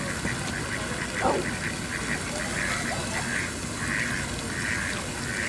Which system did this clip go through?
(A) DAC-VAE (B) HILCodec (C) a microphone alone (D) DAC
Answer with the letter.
C